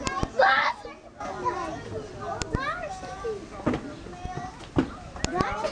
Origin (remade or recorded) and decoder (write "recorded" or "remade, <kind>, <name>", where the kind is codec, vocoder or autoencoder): recorded